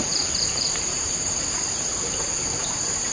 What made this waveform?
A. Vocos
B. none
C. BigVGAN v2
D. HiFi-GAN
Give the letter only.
C